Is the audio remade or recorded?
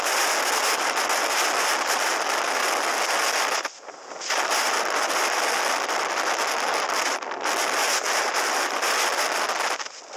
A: recorded